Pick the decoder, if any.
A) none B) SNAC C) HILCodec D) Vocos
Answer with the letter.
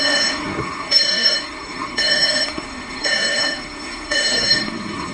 B